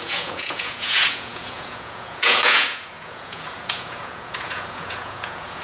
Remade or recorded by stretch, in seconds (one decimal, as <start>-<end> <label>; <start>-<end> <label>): 0.0-5.6 remade